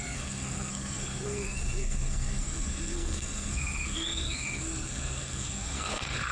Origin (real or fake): fake